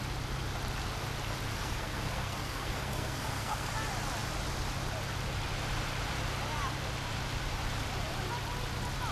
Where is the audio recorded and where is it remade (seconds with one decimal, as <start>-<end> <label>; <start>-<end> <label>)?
0.0-1.5 recorded; 1.5-3.7 remade; 3.7-9.1 recorded